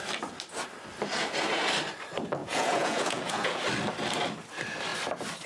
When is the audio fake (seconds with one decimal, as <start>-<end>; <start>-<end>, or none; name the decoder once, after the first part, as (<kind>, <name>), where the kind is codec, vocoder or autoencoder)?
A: 2.4-3.6 (vocoder, Vocos)